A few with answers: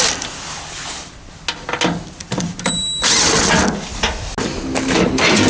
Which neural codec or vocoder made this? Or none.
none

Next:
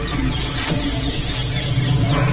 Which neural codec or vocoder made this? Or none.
none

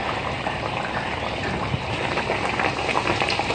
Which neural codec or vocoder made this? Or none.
none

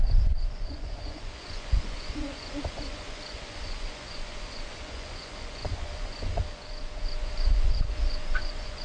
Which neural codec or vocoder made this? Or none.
vocoder, Vocos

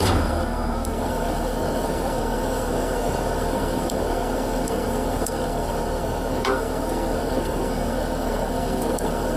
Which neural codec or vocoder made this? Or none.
codec, SNAC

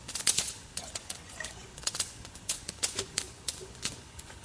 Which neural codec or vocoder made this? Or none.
vocoder, Vocos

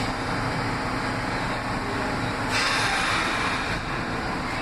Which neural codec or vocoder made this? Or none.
none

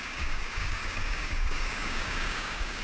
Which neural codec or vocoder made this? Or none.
codec, DAC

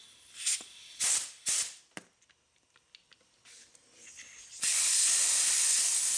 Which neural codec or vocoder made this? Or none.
none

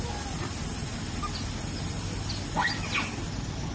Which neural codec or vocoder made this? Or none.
none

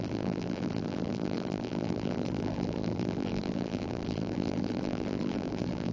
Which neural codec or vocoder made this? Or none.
vocoder, BigVGAN v2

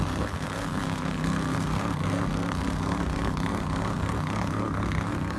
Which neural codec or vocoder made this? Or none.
codec, SNAC